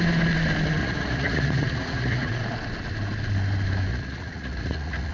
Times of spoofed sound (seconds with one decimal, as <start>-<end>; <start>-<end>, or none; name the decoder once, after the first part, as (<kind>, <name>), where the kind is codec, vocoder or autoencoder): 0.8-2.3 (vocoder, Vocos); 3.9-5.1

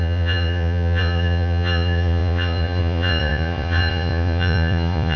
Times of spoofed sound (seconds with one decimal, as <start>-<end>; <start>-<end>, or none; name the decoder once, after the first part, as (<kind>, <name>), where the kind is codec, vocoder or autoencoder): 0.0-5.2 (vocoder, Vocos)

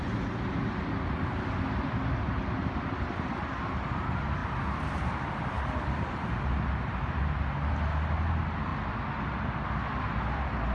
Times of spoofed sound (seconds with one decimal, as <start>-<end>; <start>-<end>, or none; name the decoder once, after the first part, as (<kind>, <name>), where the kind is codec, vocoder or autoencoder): none

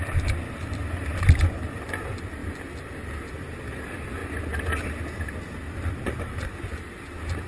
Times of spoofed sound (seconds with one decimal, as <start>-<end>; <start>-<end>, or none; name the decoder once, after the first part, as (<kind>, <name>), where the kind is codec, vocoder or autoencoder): none

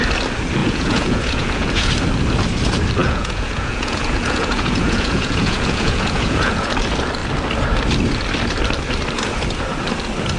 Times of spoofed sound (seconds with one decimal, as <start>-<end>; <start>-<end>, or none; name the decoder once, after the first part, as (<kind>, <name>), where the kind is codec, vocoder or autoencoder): 0.6-1.9 (vocoder, Vocos); 3.0-6.7

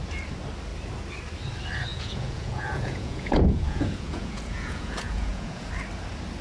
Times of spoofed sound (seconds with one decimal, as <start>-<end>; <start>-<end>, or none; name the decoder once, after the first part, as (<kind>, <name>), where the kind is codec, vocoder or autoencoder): 1.9-5.7 (vocoder, Vocos)

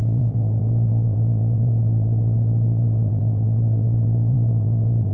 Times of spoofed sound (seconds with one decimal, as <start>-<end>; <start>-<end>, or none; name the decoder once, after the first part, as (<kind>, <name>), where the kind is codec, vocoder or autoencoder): 0.0-5.1 (vocoder, Vocos)

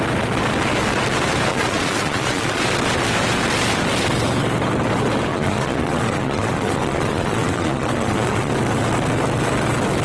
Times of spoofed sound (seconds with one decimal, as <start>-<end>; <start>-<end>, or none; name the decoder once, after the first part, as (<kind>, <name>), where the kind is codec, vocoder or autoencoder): 1.5-2.6 (vocoder, Vocos); 5.3-8.5